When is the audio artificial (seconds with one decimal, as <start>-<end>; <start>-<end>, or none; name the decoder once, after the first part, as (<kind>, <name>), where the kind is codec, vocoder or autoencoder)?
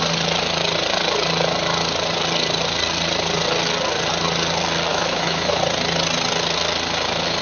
4.9-5.6 (autoencoder, DAC-VAE)